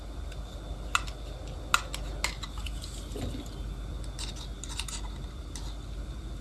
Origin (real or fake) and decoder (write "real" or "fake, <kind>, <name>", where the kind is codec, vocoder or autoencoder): real